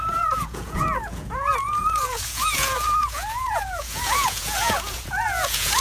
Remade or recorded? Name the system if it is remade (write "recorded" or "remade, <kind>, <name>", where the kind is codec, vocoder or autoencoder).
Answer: remade, vocoder, Vocos